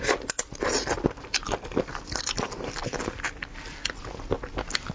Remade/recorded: recorded